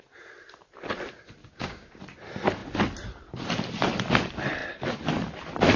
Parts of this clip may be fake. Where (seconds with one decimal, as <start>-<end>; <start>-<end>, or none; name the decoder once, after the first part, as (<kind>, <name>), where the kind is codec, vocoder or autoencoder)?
1.4-2.0 (codec, DAC)